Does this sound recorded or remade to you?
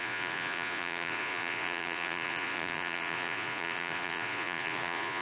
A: remade